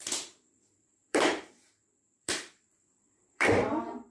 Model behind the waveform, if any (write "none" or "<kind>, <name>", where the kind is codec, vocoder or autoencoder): vocoder, BigVGAN v2